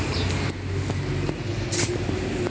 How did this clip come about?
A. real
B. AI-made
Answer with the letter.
A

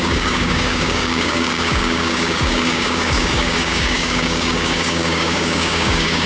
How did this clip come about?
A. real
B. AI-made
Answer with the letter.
B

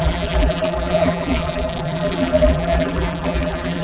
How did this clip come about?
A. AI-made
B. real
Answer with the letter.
A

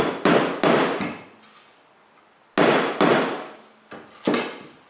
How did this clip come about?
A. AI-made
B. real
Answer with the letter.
B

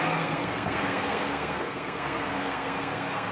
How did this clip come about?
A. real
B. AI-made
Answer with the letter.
B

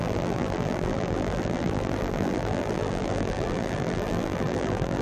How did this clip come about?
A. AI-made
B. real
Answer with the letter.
A